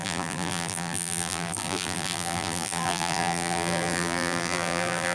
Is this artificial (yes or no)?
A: yes